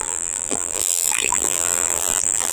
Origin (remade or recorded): remade